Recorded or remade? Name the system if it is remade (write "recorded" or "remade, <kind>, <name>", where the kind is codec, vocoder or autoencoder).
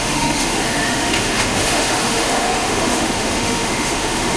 remade, autoencoder, DAC-VAE